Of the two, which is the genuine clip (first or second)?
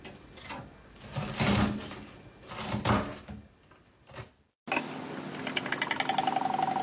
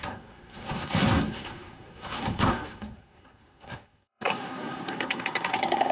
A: first